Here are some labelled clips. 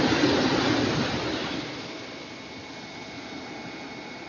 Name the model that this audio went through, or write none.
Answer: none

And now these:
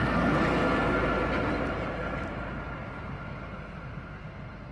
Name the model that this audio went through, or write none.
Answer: none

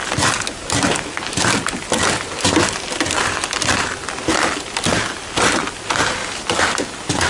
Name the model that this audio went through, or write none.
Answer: none